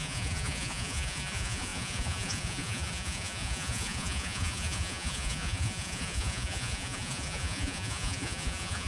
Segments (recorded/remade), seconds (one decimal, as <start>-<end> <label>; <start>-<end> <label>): 0.0-8.9 remade